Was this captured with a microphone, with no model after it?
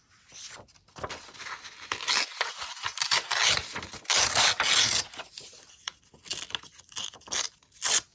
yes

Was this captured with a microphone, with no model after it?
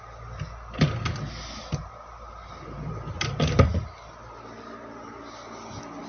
yes